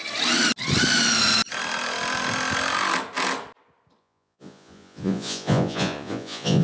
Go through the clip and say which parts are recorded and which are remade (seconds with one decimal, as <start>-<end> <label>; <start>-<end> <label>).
0.0-4.0 recorded; 4.0-6.6 remade

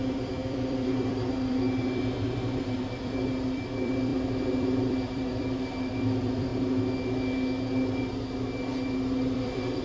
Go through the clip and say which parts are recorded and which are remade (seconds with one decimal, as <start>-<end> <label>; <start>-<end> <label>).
0.0-6.5 remade; 6.5-9.2 recorded; 9.2-9.8 remade

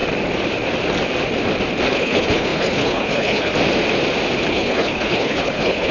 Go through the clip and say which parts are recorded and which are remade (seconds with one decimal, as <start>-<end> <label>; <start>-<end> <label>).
0.0-1.9 recorded; 1.9-3.5 remade; 3.5-4.5 recorded; 4.5-5.9 remade

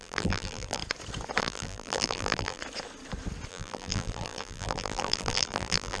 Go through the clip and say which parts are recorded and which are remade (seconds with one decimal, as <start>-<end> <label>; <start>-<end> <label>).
0.0-0.8 remade; 0.8-1.4 recorded; 1.4-2.6 remade; 2.6-3.5 recorded; 3.5-6.0 remade

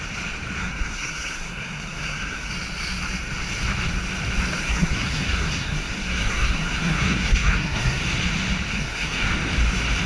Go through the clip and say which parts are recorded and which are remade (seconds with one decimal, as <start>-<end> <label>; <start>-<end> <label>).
0.0-0.6 recorded; 0.6-2.5 remade; 2.5-4.6 recorded; 4.6-8.0 remade; 8.0-8.7 recorded; 8.7-9.3 remade; 9.3-10.1 recorded

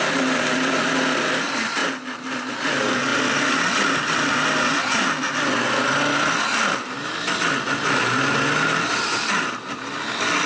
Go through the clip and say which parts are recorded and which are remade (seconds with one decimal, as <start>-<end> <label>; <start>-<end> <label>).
0.0-10.5 recorded